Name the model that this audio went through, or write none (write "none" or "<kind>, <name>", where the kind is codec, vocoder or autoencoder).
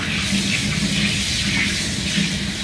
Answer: none